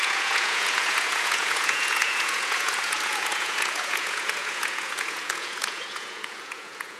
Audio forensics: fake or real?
fake